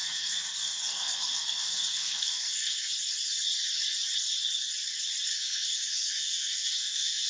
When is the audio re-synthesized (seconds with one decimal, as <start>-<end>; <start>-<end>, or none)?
0.0-2.9; 5.3-7.3